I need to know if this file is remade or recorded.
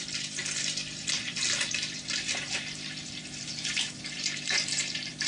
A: remade